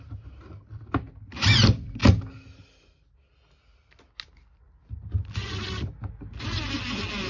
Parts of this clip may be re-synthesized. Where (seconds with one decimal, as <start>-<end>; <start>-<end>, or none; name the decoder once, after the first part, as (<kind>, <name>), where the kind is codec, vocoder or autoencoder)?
none